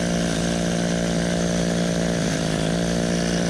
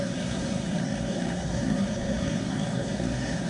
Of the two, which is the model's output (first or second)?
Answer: second